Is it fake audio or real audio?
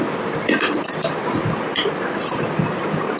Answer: real